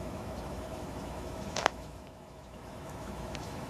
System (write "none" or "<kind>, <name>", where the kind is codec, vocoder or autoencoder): autoencoder, DAC-VAE